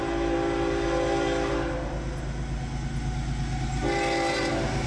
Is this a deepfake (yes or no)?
no